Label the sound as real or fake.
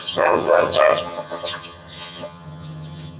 fake